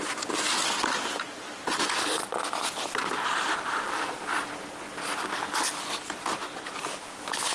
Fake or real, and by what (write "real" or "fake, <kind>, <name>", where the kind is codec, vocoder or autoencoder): real